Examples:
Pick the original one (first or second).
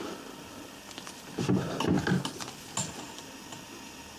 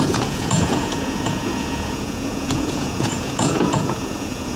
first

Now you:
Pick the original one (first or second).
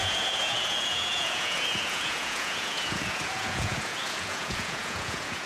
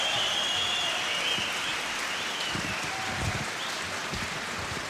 second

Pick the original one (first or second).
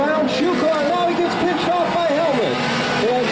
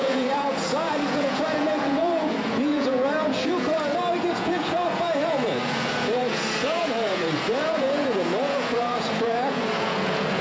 first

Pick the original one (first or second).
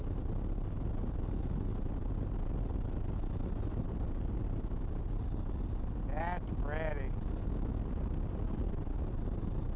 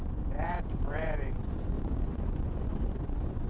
first